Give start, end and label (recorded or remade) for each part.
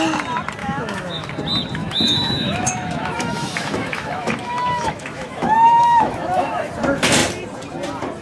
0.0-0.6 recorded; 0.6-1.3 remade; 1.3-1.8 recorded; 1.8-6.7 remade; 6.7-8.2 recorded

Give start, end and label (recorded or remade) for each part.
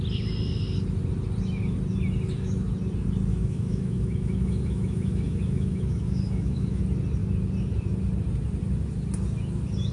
0.0-3.3 recorded; 3.3-6.8 remade; 6.8-9.9 recorded